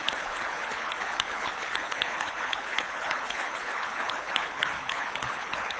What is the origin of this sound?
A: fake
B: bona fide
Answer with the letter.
A